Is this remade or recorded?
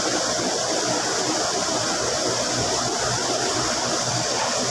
remade